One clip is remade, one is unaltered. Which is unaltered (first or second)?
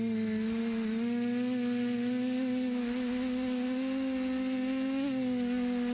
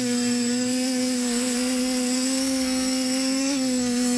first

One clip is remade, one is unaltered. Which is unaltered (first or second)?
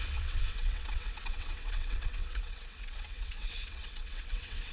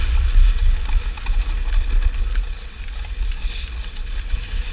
second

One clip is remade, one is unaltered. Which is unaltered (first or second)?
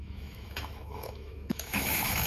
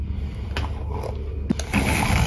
second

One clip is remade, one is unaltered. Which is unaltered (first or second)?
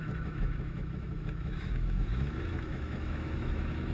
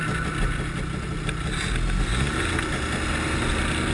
second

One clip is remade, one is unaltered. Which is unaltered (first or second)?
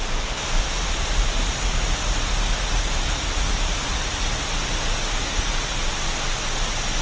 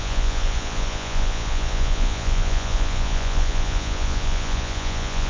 first